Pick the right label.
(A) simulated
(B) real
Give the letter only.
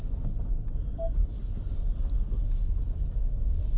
B